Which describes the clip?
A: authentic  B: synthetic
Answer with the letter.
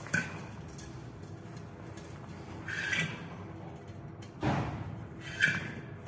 A